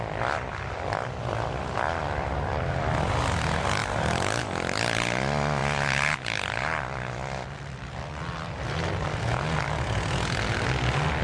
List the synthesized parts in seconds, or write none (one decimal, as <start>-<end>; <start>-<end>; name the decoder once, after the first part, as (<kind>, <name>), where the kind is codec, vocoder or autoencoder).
none

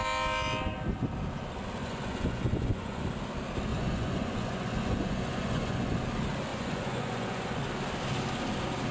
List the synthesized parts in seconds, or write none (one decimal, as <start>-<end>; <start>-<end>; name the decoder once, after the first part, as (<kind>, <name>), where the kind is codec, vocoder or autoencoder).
1.8-3.0 (vocoder, Vocos); 3.7-5.9; 6.5-7.6

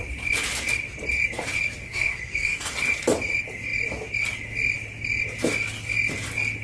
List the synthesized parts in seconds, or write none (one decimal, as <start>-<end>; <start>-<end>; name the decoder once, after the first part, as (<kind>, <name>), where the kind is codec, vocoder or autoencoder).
1.8-2.7 (codec, SNAC)